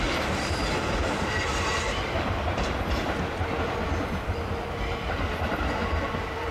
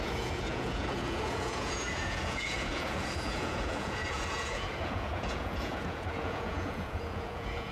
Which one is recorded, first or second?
first